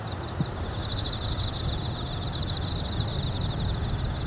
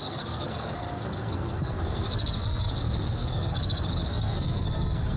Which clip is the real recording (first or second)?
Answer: first